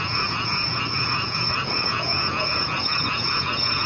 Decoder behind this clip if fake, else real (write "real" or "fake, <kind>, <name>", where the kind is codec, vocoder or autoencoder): fake, vocoder, Vocos